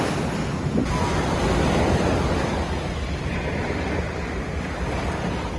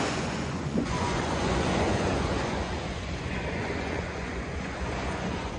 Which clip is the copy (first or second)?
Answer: second